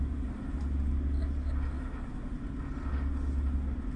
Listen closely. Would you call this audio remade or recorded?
recorded